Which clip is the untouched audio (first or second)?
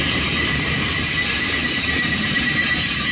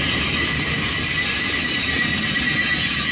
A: second